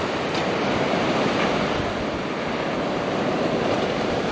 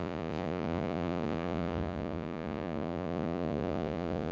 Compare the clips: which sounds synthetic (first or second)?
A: second